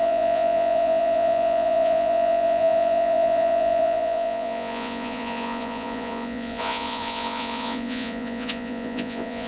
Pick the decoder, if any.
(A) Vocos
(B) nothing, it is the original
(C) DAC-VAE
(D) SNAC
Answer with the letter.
A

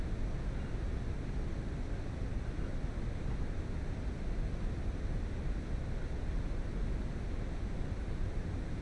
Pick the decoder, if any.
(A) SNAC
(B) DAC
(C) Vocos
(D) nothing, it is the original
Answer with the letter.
D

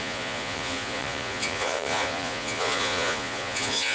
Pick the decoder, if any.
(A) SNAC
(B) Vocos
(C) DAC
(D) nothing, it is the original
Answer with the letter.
B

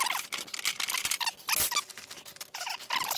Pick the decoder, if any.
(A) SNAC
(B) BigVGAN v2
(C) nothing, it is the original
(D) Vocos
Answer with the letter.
C